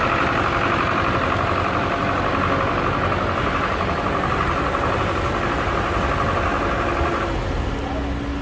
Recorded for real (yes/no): yes